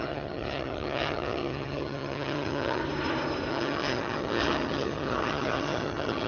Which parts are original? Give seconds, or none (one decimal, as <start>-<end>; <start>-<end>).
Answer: 2.8-3.5